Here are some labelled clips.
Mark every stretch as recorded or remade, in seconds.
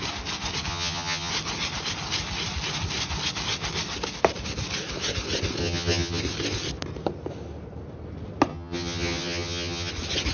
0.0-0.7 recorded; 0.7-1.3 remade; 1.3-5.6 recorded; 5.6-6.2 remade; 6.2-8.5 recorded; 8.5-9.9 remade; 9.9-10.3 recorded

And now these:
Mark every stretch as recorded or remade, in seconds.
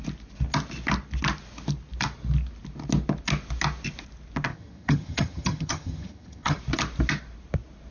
0.0-4.5 recorded; 4.5-6.6 remade; 6.6-7.9 recorded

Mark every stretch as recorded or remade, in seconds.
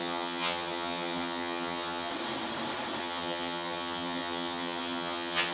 0.0-2.1 remade; 2.1-3.0 recorded; 3.0-5.5 remade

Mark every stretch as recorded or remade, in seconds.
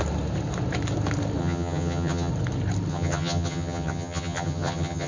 0.0-1.4 recorded; 1.4-2.3 remade; 2.3-2.9 recorded; 2.9-5.1 remade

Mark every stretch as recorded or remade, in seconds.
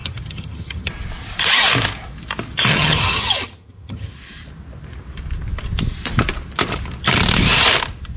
0.0-0.9 remade; 0.9-2.7 recorded; 2.7-4.1 remade; 4.1-8.2 recorded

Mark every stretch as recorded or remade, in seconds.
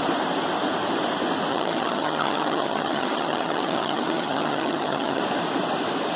0.0-1.5 recorded; 1.5-5.2 remade; 5.2-6.2 recorded